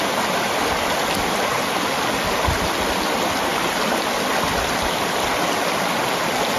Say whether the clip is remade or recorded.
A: recorded